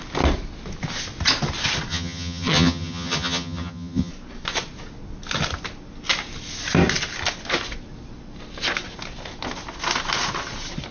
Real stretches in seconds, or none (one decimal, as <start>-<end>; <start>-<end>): 0.0-1.9; 4.1-10.9